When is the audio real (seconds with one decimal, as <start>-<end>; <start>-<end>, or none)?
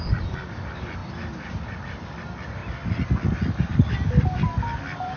2.6-4.2